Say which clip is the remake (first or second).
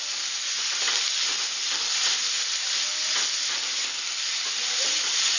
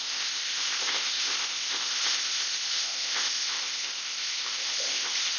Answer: second